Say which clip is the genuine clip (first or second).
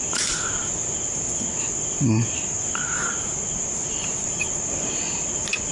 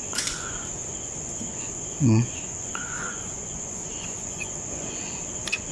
first